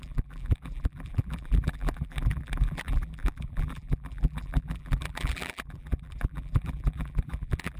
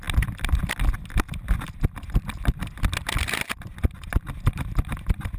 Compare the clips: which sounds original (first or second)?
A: second